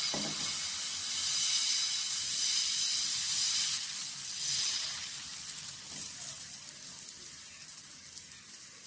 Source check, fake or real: real